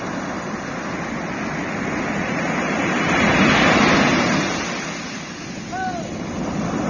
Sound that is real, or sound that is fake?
real